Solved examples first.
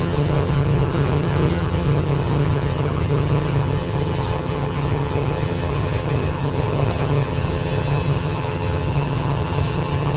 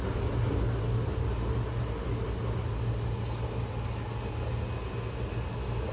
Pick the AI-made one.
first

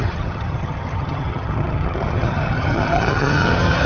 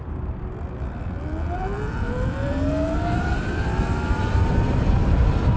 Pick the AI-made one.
first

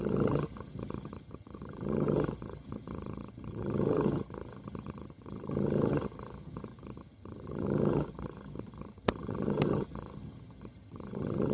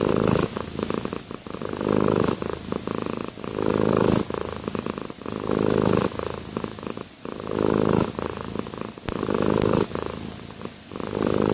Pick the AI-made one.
first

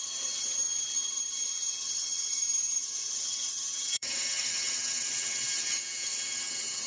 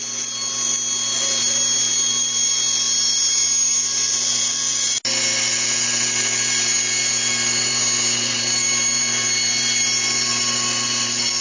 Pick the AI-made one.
first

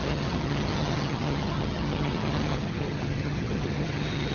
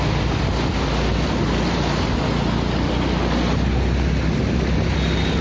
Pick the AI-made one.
first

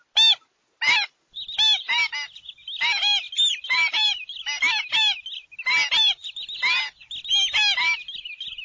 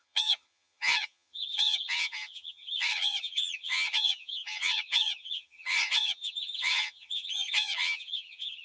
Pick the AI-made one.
second